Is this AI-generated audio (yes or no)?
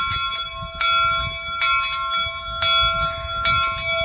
no